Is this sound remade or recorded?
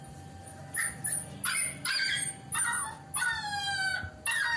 recorded